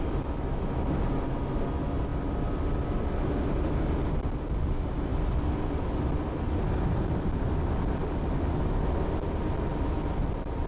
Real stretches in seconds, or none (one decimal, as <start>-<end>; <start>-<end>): 0.0-10.7